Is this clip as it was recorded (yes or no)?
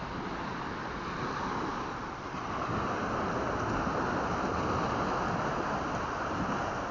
yes